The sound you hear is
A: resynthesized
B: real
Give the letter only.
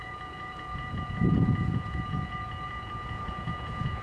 A